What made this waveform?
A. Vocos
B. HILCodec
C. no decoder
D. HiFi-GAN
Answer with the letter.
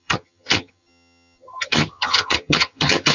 D